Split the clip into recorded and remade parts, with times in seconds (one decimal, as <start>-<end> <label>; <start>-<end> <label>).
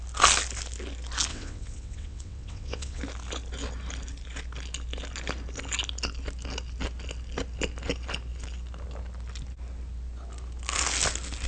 0.0-1.3 recorded; 1.3-3.0 remade; 3.0-11.5 recorded